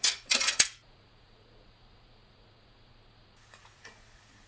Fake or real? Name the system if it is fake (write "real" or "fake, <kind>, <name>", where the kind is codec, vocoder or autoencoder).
fake, vocoder, Vocos